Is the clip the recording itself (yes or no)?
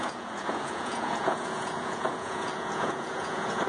no